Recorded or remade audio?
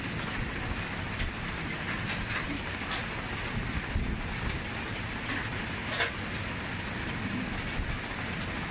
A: recorded